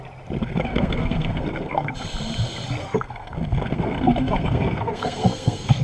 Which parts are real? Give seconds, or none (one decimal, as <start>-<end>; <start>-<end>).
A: 0.0-0.4; 1.9-2.8